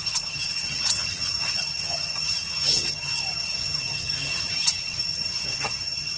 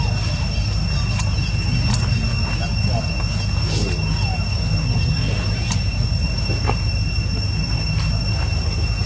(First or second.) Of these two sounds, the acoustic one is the second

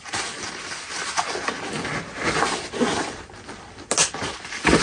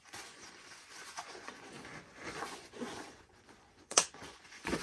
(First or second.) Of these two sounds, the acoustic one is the first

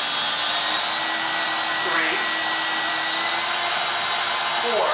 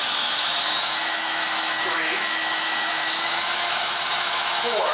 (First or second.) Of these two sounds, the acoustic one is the first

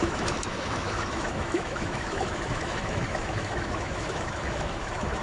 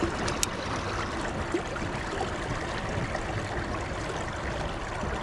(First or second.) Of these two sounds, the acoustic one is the second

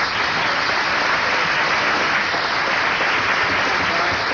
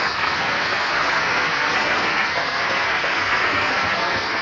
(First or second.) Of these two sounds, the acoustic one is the first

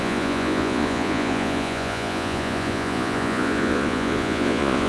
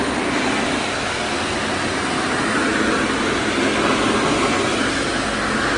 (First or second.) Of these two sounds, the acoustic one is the second